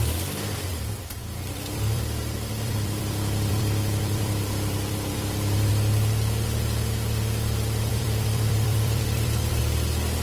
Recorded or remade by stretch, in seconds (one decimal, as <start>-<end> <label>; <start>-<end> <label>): 0.0-0.7 recorded; 0.7-5.7 remade; 5.7-7.9 recorded; 7.9-9.6 remade; 9.6-10.2 recorded